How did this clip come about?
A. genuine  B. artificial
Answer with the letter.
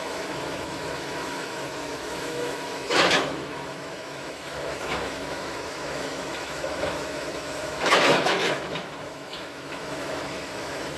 B